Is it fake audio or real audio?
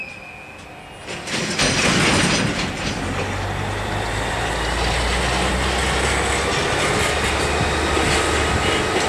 real